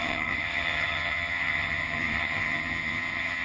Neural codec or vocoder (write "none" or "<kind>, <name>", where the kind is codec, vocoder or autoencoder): vocoder, HiFi-GAN